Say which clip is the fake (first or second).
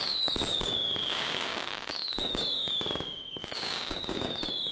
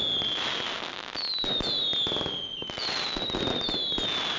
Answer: first